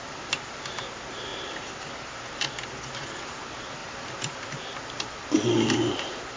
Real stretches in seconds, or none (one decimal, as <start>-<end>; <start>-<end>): 0.0-1.3; 2.5-3.8; 4.5-6.4